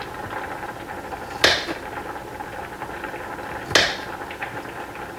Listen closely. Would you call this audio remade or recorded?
recorded